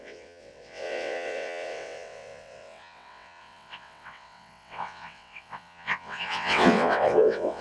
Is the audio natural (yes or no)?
no